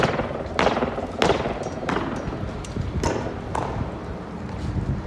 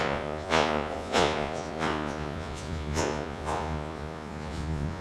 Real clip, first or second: first